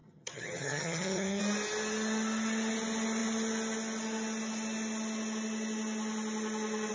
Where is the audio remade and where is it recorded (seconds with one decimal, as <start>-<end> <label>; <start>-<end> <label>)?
0.0-1.4 remade; 1.4-6.9 recorded